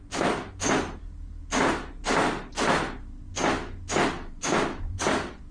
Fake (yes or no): no